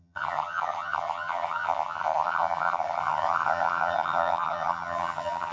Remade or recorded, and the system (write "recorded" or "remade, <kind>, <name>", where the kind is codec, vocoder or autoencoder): remade, vocoder, HiFi-GAN